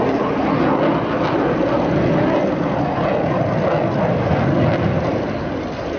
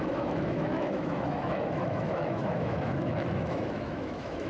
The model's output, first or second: second